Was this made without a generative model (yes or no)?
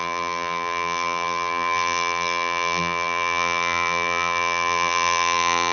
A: no